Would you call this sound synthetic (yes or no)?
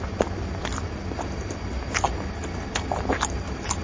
no